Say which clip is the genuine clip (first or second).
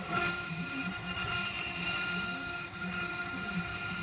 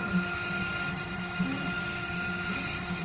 second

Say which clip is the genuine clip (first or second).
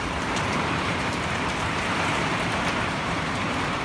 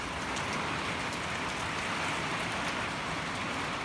second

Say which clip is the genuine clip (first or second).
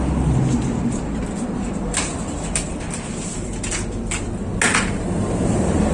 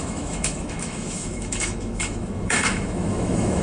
first